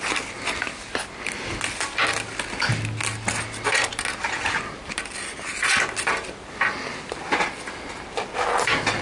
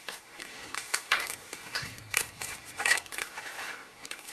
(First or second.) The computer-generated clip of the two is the second